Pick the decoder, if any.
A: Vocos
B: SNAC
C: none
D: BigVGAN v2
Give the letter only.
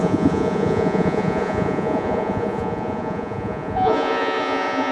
A